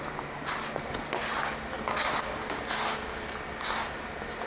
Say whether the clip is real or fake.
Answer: real